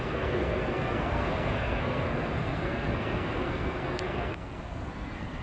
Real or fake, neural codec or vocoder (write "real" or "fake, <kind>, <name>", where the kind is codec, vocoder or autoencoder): fake, codec, SNAC